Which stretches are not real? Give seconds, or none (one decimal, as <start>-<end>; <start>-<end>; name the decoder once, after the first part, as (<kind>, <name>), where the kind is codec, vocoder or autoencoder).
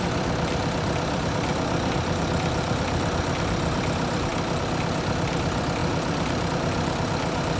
0.0-4.3 (vocoder, BigVGAN v2); 4.9-5.8; 6.5-7.6